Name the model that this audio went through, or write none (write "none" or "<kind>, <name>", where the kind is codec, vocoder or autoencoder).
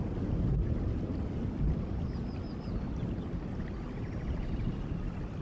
none